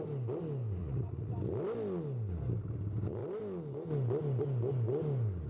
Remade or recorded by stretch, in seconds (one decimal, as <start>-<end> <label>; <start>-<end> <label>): 0.0-0.8 recorded; 0.8-1.3 remade; 1.3-5.5 recorded